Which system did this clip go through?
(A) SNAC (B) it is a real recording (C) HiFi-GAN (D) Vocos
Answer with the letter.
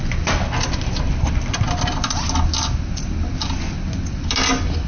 B